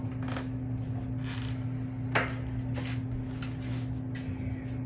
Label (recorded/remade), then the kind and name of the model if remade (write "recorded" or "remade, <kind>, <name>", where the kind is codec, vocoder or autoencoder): recorded